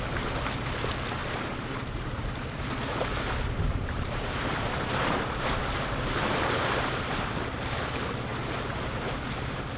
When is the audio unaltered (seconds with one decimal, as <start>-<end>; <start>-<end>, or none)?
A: 0.0-1.2; 2.7-3.7; 7.4-9.8